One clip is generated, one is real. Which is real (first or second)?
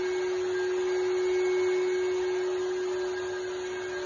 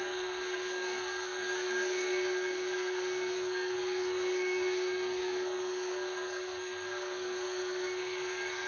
first